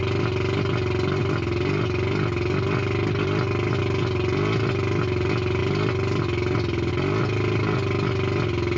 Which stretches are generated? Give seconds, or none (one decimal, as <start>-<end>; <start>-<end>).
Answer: none